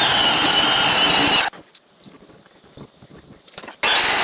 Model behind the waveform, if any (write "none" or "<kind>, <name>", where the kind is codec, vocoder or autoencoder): none